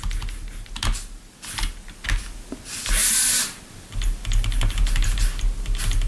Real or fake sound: real